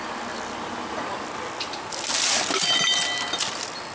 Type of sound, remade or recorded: recorded